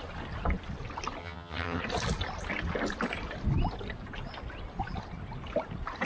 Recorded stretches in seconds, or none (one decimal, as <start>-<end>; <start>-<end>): 0.0-1.2; 1.8-6.1